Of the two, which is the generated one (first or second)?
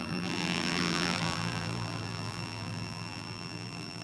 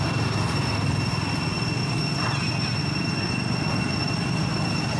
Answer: first